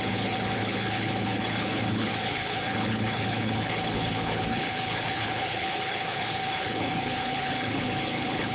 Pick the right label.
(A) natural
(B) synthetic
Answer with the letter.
B